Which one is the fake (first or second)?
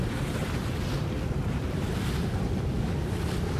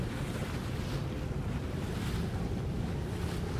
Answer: first